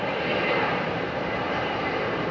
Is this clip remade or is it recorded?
remade